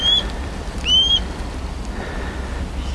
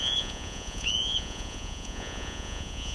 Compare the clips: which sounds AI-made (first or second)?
second